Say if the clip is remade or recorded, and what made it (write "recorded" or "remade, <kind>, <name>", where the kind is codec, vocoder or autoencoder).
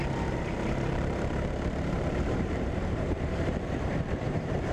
remade, vocoder, BigVGAN v2